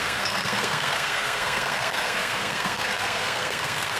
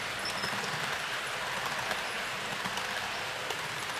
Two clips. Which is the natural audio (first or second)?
second